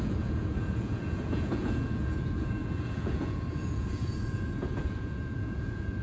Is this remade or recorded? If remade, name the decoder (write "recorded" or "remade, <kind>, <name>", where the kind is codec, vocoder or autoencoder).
remade, vocoder, Vocos